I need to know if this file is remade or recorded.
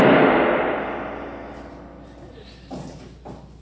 recorded